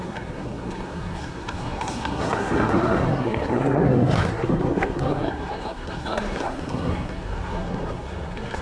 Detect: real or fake fake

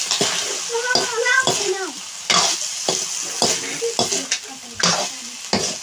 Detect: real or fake real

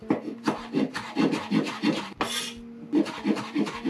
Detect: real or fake real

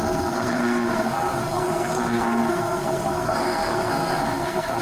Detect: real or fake fake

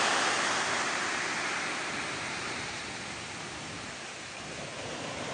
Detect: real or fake real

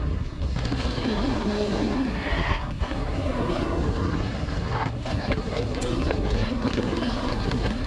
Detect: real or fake fake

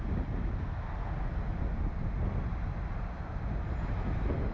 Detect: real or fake real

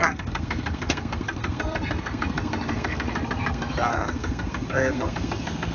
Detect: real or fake fake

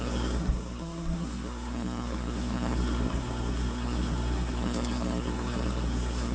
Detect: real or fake fake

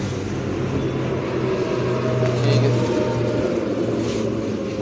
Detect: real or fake real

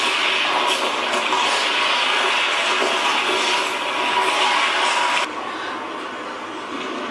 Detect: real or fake real